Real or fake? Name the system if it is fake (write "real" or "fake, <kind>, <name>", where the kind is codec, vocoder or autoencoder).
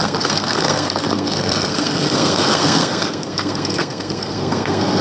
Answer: fake, codec, SNAC